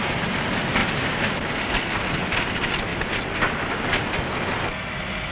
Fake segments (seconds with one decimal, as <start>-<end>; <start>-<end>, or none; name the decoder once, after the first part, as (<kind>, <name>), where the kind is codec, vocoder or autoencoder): none